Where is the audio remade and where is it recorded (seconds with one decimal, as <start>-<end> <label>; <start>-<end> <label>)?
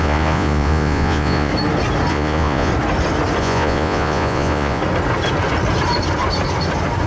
0.0-1.5 remade; 1.5-2.1 recorded; 2.1-2.7 remade; 2.7-3.4 recorded; 3.4-4.8 remade; 4.8-7.1 recorded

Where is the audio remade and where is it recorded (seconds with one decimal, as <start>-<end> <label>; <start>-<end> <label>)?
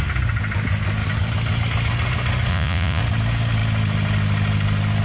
0.0-2.5 recorded; 2.5-3.0 remade; 3.0-5.0 recorded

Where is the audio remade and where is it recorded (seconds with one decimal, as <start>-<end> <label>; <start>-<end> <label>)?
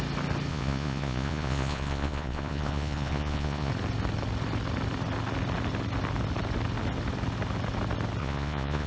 0.0-0.5 recorded; 0.5-3.7 remade; 3.7-8.2 recorded; 8.2-8.9 remade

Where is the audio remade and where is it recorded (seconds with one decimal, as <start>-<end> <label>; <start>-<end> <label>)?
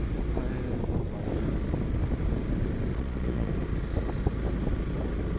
0.0-2.9 recorded; 2.9-3.5 remade; 3.5-5.4 recorded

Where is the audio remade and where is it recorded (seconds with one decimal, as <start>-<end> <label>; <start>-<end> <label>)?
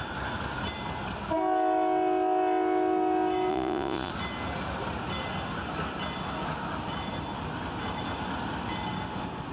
0.0-3.5 recorded; 3.5-4.1 remade; 4.1-9.5 recorded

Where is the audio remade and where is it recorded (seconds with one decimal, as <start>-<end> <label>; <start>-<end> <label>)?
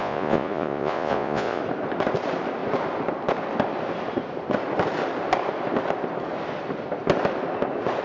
0.0-1.6 remade; 1.6-8.0 recorded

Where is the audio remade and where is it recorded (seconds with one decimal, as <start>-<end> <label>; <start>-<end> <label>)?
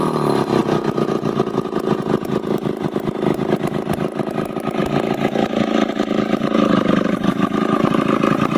0.0-0.6 recorded; 0.6-2.5 remade; 2.5-8.6 recorded